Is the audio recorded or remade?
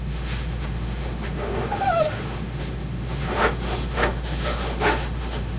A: remade